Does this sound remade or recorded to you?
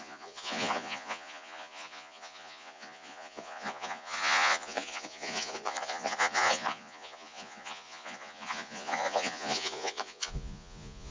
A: remade